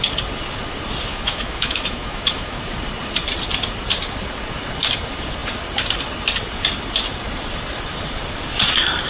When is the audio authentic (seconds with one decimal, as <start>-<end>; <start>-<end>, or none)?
0.0-1.1; 2.6-9.1

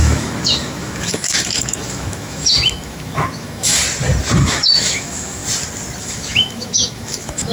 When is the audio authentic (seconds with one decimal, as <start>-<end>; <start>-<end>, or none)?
3.8-4.4; 5.4-6.0